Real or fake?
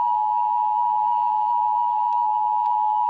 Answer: fake